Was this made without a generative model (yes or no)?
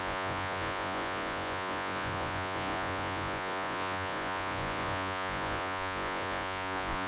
no